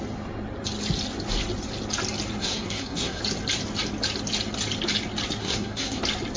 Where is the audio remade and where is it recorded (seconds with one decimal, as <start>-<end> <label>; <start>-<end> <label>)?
0.0-2.4 recorded; 2.4-3.2 remade; 3.2-5.4 recorded; 5.4-6.0 remade; 6.0-6.4 recorded

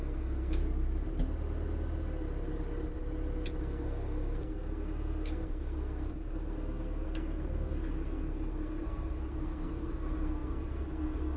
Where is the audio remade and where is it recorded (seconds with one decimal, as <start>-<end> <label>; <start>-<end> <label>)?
0.0-0.6 remade; 0.6-3.6 recorded; 3.6-11.4 remade

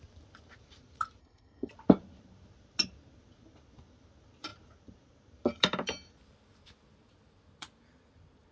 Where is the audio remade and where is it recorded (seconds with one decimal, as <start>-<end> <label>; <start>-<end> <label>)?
0.0-1.2 recorded; 1.2-1.7 remade; 1.7-8.5 recorded

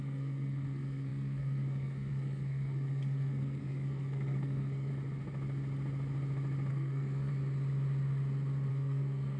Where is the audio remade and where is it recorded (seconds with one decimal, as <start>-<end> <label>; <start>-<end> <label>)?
0.0-4.9 remade; 4.9-6.7 recorded; 6.7-7.3 remade; 7.3-8.7 recorded; 8.7-9.4 remade

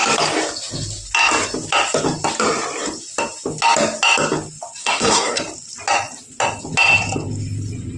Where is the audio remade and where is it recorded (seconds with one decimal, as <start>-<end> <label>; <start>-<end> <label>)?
0.0-4.8 recorded; 4.8-5.4 remade; 5.4-8.0 recorded

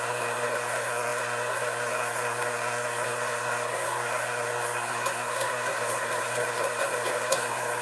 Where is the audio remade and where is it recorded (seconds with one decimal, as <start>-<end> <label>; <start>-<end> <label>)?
0.0-7.8 remade

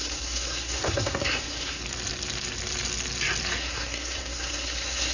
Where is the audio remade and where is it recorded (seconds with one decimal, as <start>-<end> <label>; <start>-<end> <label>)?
0.0-1.8 remade; 1.8-3.6 recorded; 3.6-5.1 remade